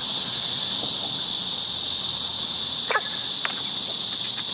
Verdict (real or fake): real